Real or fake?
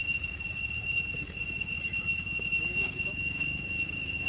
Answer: fake